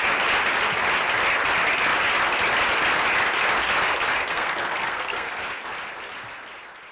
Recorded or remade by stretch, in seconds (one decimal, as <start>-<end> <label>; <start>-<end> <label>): 0.0-4.3 recorded; 4.3-5.3 remade; 5.3-6.9 recorded